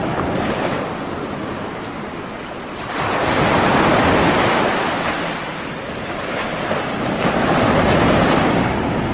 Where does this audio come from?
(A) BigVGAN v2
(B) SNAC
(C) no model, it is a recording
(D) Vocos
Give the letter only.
C